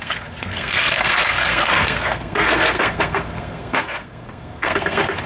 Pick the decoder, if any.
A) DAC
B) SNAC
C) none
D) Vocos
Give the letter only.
B